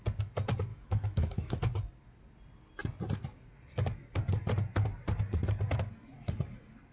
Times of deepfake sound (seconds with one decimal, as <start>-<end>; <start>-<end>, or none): 0.7-1.6